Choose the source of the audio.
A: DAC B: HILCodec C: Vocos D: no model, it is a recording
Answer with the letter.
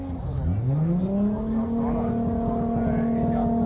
D